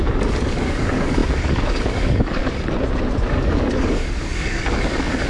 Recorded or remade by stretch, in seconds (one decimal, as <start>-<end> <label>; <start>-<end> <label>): 0.0-2.4 remade; 2.4-3.3 recorded; 3.3-5.3 remade